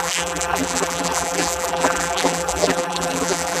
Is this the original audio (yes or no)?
no